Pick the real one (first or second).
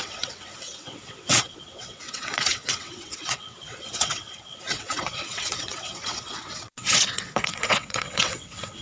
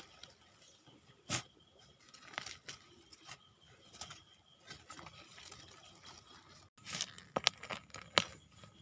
second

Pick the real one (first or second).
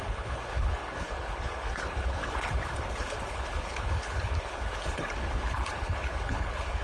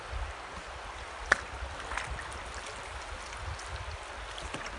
second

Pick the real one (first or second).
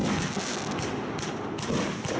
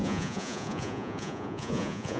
first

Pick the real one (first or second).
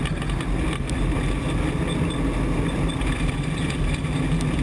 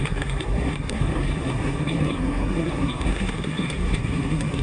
first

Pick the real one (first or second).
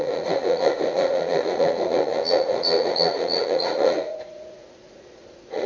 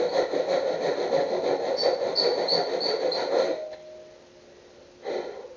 second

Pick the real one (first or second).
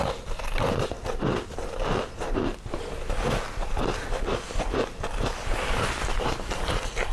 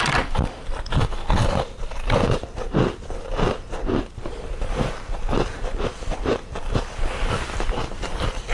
first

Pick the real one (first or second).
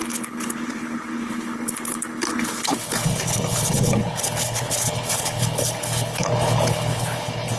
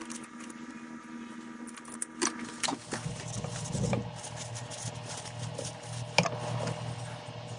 second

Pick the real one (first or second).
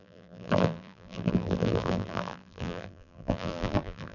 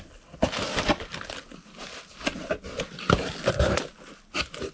second